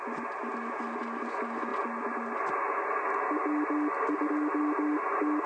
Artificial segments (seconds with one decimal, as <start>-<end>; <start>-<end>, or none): none